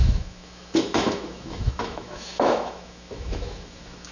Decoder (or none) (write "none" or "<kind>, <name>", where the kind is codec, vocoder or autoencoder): autoencoder, DAC-VAE